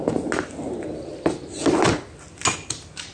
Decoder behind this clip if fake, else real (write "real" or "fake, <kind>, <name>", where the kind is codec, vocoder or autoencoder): real